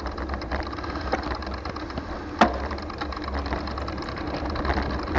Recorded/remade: recorded